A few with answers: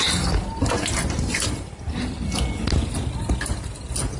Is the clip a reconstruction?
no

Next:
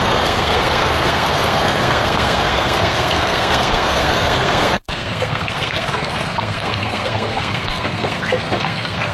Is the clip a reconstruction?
yes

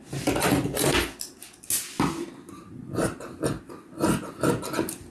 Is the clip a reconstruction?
no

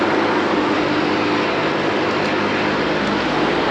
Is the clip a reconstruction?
no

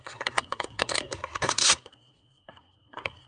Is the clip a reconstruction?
yes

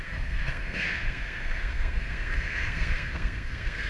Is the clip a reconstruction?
yes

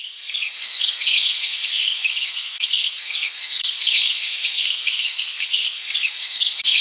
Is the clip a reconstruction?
yes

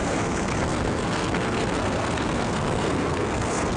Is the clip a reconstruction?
yes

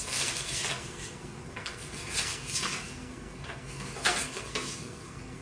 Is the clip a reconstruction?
yes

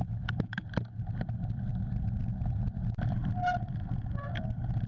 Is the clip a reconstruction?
no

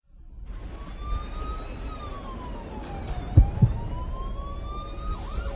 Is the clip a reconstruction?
no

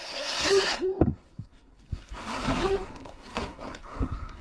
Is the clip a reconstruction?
yes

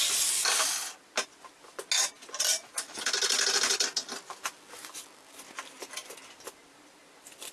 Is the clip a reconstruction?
no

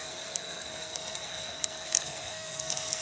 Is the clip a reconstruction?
yes